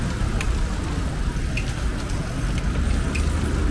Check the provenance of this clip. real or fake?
real